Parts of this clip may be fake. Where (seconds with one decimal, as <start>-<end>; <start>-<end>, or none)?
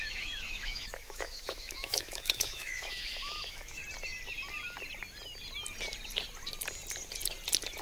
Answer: 0.0-3.8